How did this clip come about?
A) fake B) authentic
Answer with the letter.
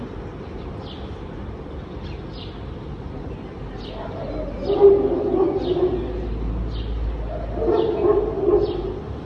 B